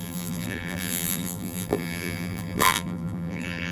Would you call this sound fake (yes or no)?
yes